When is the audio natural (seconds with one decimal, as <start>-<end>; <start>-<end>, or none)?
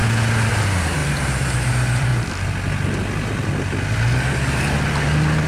0.0-0.5; 2.1-5.5